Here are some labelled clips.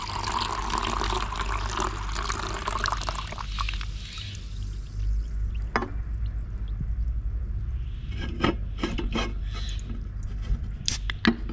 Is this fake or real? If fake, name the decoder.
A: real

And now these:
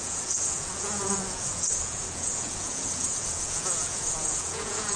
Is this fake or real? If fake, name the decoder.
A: fake, vocoder, Vocos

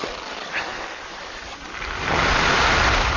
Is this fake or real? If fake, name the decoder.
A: real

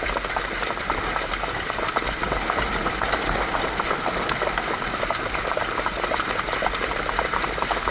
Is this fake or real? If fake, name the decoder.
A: real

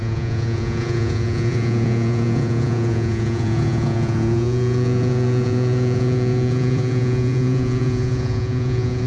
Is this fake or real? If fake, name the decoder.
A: fake, vocoder, Vocos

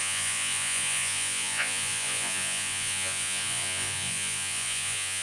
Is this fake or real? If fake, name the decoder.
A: fake, vocoder, Vocos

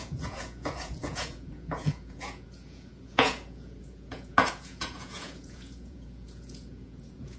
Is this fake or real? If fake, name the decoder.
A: fake, vocoder, Vocos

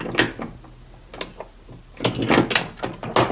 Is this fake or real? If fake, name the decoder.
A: real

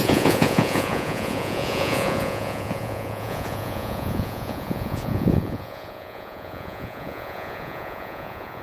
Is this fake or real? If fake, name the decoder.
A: fake, vocoder, Vocos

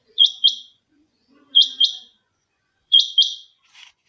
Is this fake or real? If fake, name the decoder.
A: fake, vocoder, Vocos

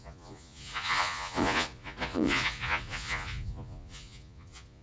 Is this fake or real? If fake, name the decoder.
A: fake, vocoder, Vocos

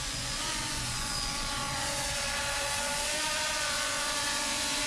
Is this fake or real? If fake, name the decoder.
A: fake, vocoder, Vocos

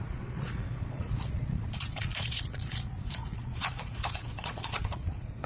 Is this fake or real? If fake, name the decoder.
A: fake, vocoder, Vocos